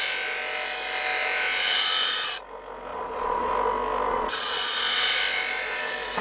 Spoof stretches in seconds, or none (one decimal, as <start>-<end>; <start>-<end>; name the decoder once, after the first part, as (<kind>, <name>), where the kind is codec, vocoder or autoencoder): 2.9-3.5 (vocoder, Vocos); 4.1-4.8